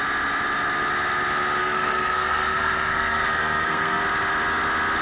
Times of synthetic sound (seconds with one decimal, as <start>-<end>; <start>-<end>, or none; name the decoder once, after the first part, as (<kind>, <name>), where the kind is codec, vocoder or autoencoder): 1.6-4.0 (codec, SNAC)